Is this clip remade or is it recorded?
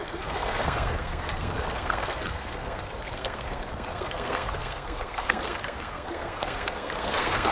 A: remade